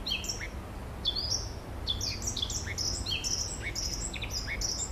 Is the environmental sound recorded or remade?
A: recorded